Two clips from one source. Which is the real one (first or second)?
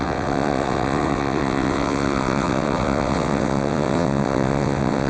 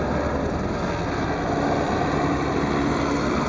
second